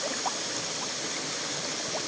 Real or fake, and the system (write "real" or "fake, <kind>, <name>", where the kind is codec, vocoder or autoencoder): real